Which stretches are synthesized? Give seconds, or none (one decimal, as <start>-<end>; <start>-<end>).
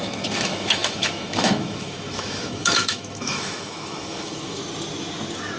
0.0-4.6